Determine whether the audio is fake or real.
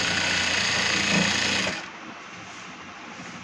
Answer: real